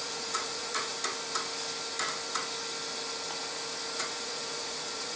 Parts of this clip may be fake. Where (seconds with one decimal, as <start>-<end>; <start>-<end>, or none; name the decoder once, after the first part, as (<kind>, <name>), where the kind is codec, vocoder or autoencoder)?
0.0-0.9 (vocoder, Vocos); 4.0-5.2